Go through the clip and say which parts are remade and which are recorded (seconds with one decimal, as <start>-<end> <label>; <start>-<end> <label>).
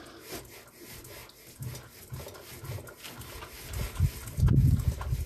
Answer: 0.0-5.3 recorded